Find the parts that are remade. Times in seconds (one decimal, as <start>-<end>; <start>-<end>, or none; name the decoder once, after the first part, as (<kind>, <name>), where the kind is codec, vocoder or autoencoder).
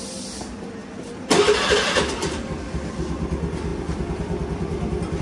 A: 0.8-3.3 (vocoder, BigVGAN v2)